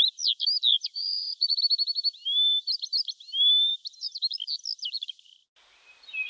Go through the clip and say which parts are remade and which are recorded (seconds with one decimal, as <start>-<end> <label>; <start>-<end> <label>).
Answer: 0.0-0.7 recorded; 0.7-1.6 remade; 1.6-6.3 recorded